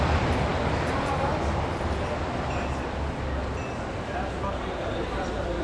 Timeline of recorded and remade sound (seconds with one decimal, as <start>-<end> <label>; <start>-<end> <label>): 0.0-0.5 remade; 0.5-3.9 recorded; 3.9-5.6 remade